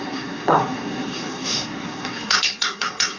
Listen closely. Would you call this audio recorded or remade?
remade